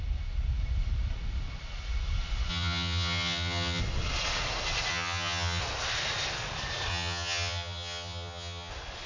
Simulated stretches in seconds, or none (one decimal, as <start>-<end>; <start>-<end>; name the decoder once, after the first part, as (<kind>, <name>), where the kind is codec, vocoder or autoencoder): 2.5-3.8 (vocoder, HiFi-GAN); 4.9-5.6; 6.9-8.7